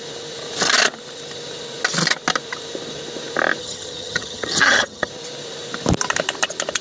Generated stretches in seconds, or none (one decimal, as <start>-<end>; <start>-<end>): 3.6-5.1